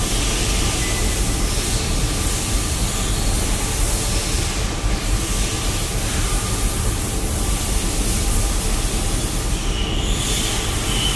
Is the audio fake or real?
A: real